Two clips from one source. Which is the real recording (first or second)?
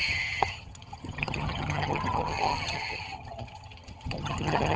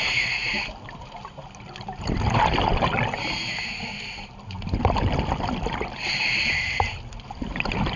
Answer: second